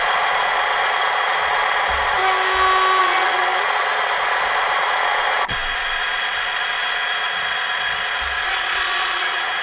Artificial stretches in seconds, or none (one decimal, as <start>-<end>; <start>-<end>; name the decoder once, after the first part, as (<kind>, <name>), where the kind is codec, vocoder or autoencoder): 0.0-2.2 (vocoder, Vocos); 3.0-9.6